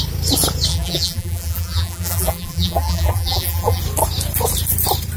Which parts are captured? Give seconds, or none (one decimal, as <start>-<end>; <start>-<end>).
0.0-0.7; 3.8-5.2